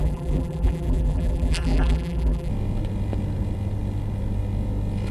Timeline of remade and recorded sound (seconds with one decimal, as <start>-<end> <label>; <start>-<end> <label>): 0.0-2.5 remade; 2.5-5.1 recorded